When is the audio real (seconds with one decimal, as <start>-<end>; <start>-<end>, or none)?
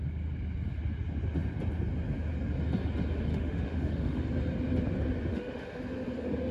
0.0-3.3; 4.2-5.3; 5.8-6.5